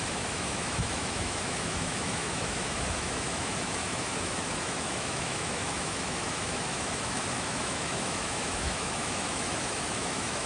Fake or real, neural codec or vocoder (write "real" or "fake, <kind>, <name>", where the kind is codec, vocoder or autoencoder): fake, autoencoder, DAC-VAE